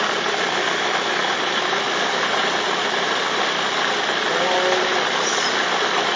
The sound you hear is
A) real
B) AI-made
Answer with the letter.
A